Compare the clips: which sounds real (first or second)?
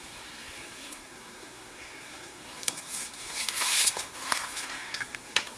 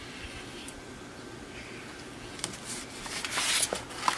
second